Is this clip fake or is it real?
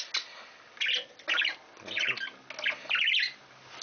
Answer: real